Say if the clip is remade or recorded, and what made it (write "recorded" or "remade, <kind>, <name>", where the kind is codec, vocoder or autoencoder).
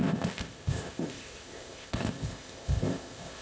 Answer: remade, codec, ZipCodec